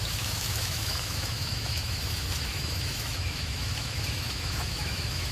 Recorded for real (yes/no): no